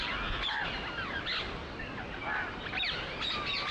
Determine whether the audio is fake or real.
real